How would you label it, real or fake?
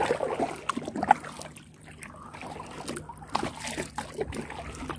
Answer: real